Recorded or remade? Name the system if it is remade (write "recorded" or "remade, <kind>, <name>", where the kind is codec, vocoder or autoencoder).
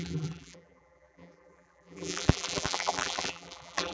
remade, vocoder, BigVGAN v2